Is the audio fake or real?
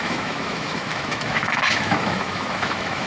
fake